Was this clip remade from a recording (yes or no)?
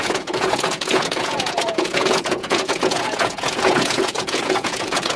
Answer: yes